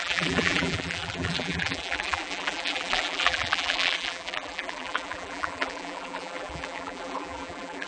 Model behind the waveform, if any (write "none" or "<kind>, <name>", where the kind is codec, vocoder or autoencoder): vocoder, BigVGAN v2